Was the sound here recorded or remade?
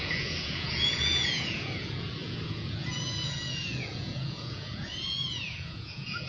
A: remade